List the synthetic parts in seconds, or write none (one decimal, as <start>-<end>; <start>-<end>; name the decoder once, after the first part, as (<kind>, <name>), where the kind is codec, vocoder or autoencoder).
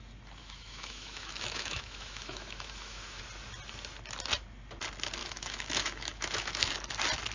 0.4-3.2 (autoencoder, DAC-VAE); 5.2-6.7